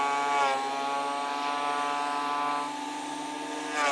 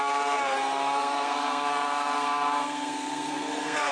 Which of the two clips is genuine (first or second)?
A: first